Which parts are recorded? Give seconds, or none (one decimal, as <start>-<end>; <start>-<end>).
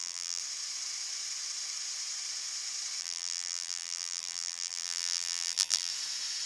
0.4-3.0; 5.9-6.5